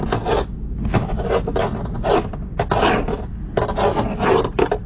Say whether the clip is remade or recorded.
recorded